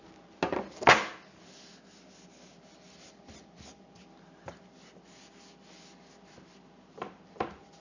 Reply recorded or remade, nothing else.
recorded